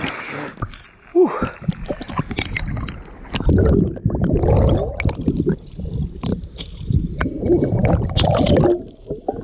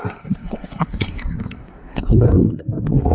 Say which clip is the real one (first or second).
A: first